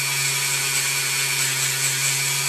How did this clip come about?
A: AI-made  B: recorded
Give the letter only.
B